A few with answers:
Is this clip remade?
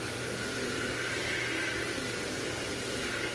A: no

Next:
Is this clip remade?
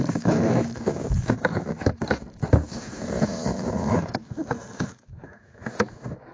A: yes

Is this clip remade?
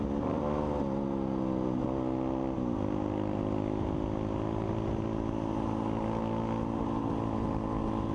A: no